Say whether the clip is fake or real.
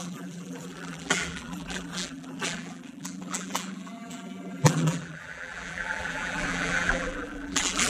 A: fake